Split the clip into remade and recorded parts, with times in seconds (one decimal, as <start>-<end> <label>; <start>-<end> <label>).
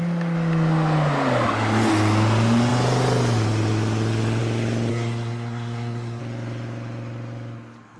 0.0-4.9 recorded; 4.9-6.2 remade; 6.2-8.0 recorded